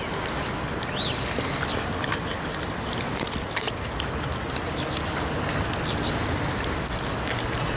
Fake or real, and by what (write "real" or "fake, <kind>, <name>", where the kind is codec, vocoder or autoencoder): real